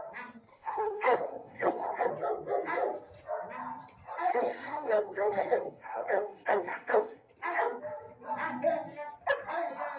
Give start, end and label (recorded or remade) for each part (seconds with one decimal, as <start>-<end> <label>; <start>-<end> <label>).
0.0-0.5 recorded; 0.5-2.1 remade; 2.1-4.3 recorded; 4.3-7.3 remade; 7.3-10.0 recorded